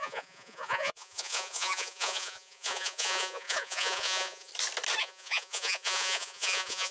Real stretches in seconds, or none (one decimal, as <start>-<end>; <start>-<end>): 4.5-5.0